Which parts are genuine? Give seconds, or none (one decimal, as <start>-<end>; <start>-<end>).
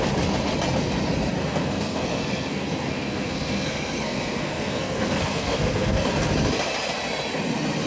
0.0-1.4; 6.1-7.9